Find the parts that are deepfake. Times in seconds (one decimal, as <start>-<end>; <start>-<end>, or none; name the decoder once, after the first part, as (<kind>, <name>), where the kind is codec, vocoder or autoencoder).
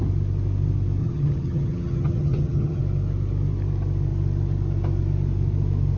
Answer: 1.0-2.8 (vocoder, HiFi-GAN)